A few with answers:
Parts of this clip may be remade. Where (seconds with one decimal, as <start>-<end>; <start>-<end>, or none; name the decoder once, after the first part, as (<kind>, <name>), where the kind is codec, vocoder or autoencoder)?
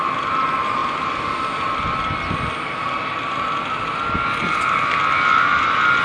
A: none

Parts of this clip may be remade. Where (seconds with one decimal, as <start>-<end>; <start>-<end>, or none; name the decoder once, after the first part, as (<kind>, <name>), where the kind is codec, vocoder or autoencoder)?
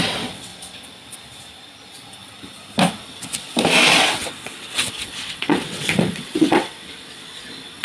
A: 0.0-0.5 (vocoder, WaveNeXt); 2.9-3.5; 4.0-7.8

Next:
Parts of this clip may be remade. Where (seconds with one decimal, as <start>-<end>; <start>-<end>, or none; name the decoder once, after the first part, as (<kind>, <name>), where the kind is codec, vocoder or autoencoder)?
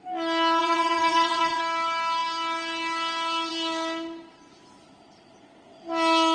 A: 0.6-1.6 (vocoder, WaveNeXt)